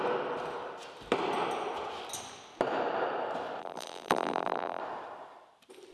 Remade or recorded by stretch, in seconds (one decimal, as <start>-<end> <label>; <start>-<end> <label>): 0.0-3.6 recorded; 3.6-4.8 remade; 4.8-5.9 recorded